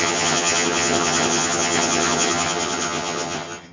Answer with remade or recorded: remade